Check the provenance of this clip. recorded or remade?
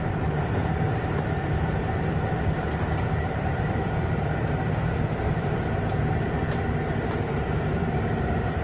remade